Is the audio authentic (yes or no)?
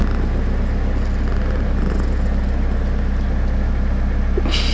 yes